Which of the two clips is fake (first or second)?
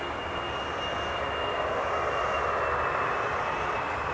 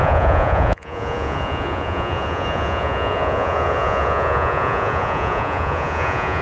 second